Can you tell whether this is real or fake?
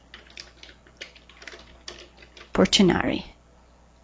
real